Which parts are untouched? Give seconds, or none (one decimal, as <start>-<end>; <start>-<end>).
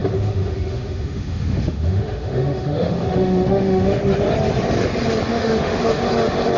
4.0-5.3; 6.0-6.6